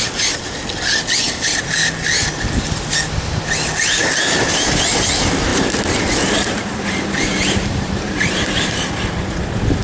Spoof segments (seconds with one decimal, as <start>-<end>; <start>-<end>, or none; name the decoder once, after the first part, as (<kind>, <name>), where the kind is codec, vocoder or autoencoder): 5.5-8.4 (vocoder, BigVGAN v2)